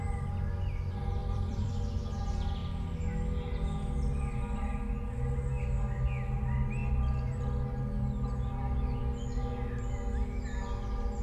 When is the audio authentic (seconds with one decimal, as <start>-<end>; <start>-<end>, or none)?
0.0-1.2; 1.7-11.2